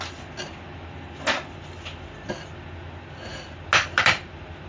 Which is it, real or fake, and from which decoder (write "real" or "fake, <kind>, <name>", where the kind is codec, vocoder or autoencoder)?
real